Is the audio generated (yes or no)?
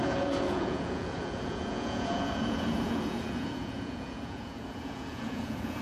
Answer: yes